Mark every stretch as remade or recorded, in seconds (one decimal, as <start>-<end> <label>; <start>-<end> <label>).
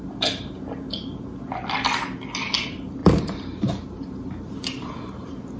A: 0.0-3.0 recorded; 3.0-4.9 remade; 4.9-5.6 recorded